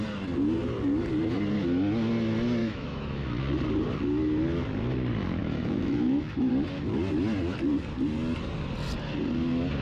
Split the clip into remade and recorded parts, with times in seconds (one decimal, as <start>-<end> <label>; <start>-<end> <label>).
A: 0.0-2.6 recorded; 2.6-3.4 remade; 3.4-5.4 recorded; 5.4-6.5 remade; 6.5-9.8 recorded